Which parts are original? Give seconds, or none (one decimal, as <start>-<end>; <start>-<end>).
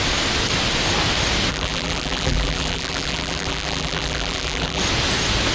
0.0-1.5; 4.8-5.5